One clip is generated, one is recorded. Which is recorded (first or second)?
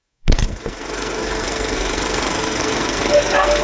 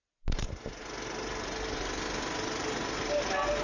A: second